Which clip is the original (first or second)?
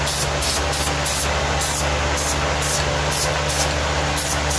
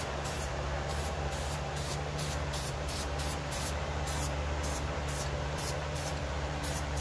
first